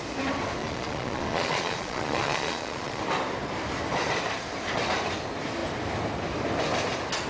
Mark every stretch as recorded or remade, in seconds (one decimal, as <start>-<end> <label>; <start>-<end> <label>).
0.0-0.6 recorded; 0.6-3.0 remade; 3.0-7.3 recorded